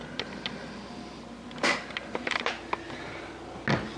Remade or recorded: recorded